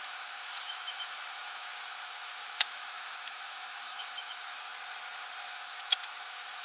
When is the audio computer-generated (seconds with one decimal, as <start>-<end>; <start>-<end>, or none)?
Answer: 0.0-4.7; 5.5-6.6